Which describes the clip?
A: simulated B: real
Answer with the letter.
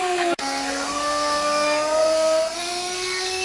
A